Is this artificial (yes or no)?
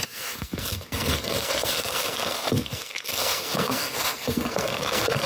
yes